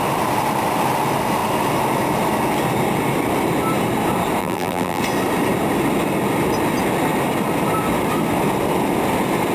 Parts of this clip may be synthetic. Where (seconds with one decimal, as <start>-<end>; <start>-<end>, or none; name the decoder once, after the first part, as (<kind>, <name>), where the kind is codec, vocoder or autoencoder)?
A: 4.4-5.0 (vocoder, BigVGAN v2)

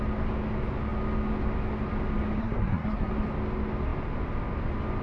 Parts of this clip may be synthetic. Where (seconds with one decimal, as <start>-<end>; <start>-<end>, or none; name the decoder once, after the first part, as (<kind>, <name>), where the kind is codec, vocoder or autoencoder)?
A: 2.4-3.1 (codec, SNAC)

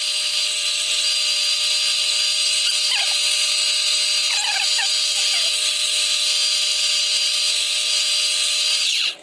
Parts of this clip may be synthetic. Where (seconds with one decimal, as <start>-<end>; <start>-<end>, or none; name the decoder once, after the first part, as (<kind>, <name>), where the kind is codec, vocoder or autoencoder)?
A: none

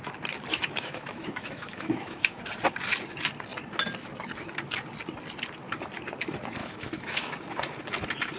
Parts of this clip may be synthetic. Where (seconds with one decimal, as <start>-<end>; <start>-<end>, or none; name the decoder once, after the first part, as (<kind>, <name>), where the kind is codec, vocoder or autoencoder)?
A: 0.5-2.4 (autoencoder, DAC-VAE); 6.6-7.3

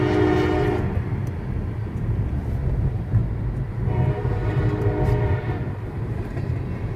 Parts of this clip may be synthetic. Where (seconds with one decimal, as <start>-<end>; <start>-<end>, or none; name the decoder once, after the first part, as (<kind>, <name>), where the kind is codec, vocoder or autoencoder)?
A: 4.4-6.1 (vocoder, BigVGAN v2)

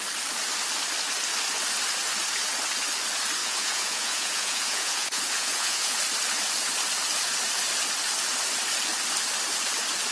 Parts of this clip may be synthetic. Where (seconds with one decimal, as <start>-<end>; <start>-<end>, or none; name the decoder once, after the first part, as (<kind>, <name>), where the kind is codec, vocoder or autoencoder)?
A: 3.4-6.0 (vocoder, Vocos)